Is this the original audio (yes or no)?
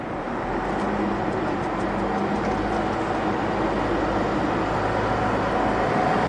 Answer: yes